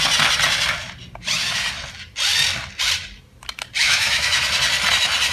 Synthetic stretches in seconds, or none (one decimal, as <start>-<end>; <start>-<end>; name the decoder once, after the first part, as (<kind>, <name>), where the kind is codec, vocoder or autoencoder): 3.8-4.4 (autoencoder, DAC-VAE)